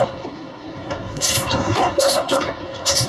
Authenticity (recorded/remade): remade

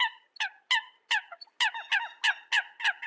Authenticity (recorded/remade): recorded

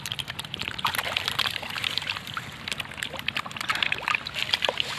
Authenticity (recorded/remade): remade